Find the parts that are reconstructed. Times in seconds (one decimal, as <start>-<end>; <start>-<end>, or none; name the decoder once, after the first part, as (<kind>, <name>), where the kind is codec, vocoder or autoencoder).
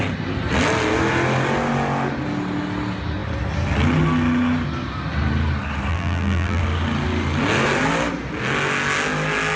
5.9-6.6 (vocoder, BigVGAN v2)